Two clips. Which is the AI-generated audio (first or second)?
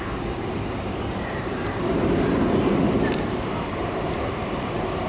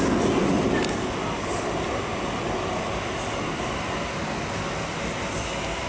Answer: first